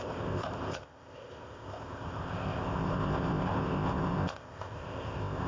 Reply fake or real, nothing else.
fake